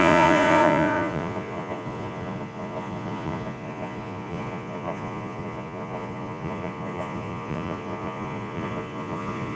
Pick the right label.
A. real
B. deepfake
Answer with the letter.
B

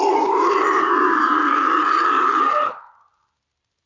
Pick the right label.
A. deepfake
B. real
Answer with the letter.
B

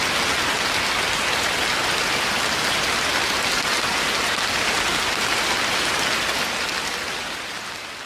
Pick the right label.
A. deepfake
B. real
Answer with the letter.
B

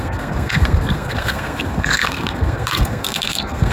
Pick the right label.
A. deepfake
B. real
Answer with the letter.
A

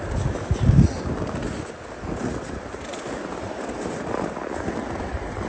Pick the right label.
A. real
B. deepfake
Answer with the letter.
A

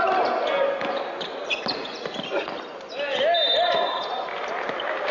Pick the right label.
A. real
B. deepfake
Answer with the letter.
A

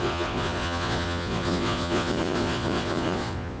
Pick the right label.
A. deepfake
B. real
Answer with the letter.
A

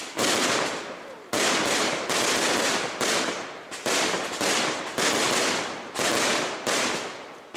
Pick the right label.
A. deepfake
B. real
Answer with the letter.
B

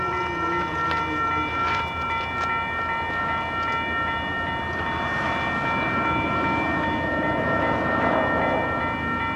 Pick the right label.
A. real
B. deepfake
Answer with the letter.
A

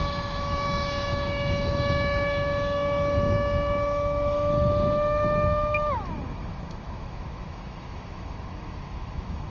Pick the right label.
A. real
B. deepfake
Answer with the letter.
B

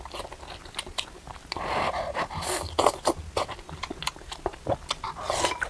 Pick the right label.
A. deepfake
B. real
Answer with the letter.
B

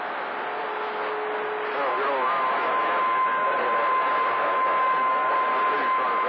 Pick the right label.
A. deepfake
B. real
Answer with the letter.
B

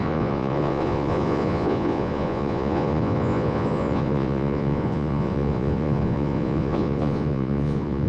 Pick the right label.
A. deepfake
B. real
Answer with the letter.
A